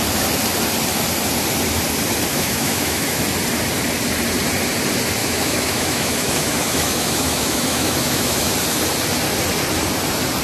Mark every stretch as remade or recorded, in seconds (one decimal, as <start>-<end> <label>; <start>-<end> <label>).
0.0-2.3 recorded; 2.3-3.2 remade; 3.2-5.2 recorded; 5.2-8.5 remade; 8.5-10.4 recorded